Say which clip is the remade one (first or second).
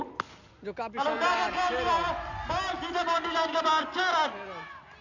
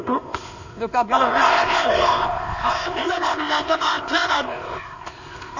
second